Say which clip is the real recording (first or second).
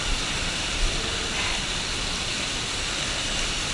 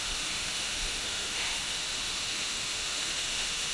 first